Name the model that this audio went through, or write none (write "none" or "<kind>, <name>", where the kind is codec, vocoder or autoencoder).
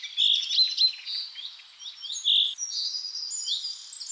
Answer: none